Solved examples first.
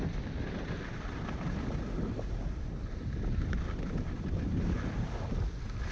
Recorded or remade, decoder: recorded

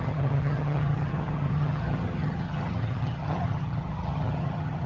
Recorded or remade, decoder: remade, vocoder, HiFi-GAN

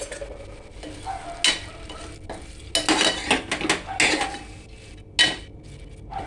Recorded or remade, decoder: recorded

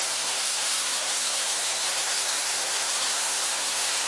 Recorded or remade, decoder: remade, codec, SNAC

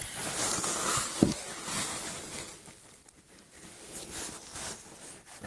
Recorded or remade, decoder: recorded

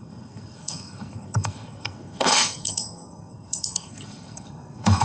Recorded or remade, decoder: remade, codec, SNAC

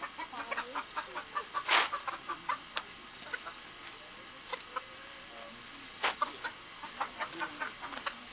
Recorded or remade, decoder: recorded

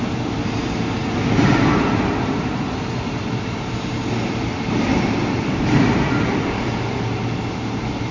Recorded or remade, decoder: remade, vocoder, BigVGAN v2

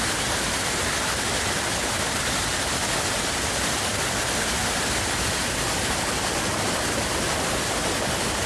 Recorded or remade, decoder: recorded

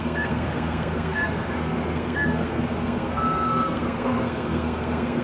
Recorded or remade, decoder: remade, codec, SNAC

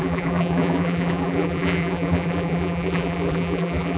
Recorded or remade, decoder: remade, vocoder, BigVGAN v2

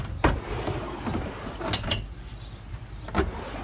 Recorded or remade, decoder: recorded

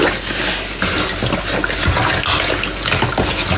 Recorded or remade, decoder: recorded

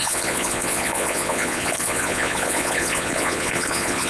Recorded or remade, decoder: remade, vocoder, Vocos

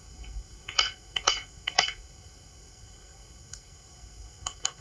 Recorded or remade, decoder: remade, codec, SNAC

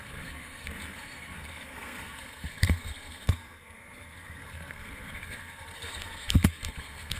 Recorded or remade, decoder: remade, codec, SNAC